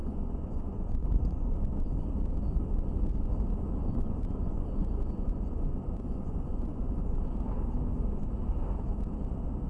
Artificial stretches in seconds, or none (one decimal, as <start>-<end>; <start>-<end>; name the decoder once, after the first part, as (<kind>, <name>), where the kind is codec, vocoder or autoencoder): 0.0-1.6 (vocoder, Vocos); 3.8-7.2